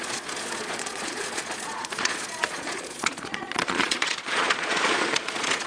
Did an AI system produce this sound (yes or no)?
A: yes